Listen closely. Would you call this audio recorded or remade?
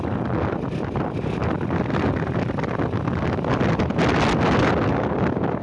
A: recorded